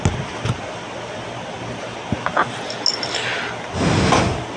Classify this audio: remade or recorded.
recorded